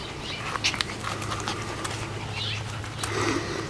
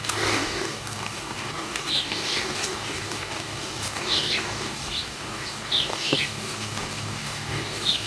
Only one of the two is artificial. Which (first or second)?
second